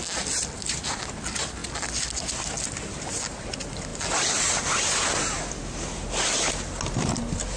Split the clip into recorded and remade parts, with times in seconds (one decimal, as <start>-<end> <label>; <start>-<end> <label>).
0.0-7.6 recorded